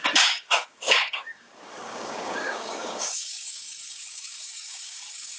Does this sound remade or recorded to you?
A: remade